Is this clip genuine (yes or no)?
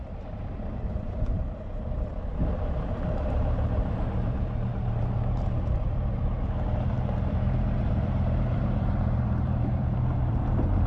no